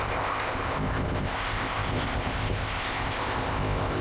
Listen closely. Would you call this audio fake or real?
fake